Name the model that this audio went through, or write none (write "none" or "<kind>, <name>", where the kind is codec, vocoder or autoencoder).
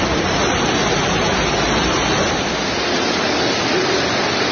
none